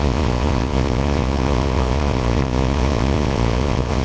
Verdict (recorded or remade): remade